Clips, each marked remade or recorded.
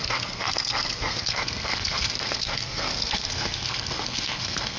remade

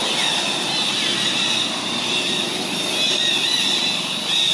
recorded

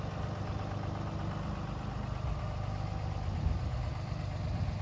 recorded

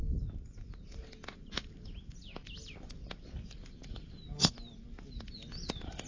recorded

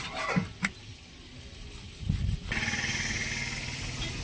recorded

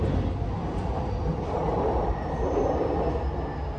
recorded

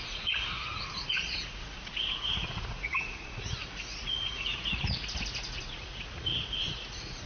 remade